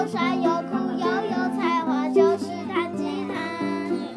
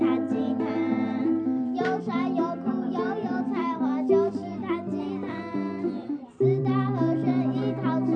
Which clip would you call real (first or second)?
first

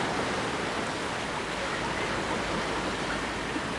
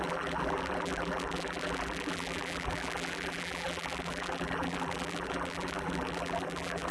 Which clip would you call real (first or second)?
first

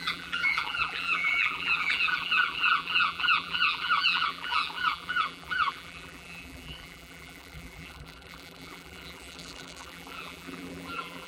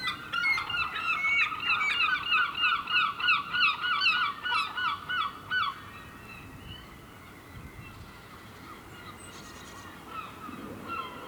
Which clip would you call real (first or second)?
second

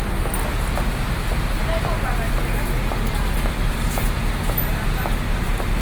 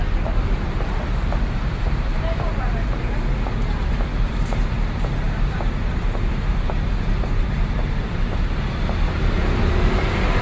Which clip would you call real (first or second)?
first